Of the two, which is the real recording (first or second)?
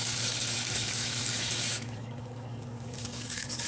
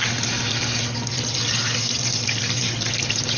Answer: second